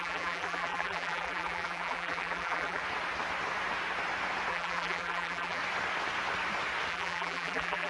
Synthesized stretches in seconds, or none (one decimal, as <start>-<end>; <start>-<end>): 0.0-2.8; 4.5-5.6; 6.9-7.9